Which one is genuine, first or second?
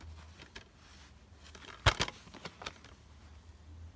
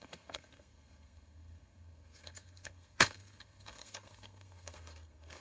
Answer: first